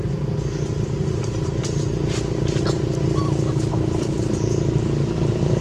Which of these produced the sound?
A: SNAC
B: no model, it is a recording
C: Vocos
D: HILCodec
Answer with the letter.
B